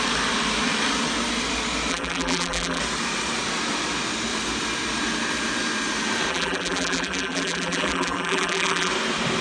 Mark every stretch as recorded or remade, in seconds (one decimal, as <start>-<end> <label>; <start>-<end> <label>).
0.0-1.9 recorded; 1.9-2.8 remade; 2.8-6.3 recorded; 6.3-8.9 remade; 8.9-9.4 recorded